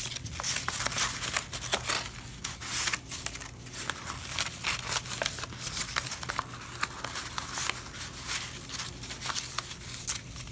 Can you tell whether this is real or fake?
real